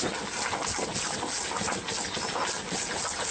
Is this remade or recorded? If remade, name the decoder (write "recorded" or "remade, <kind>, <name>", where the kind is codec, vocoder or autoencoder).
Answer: recorded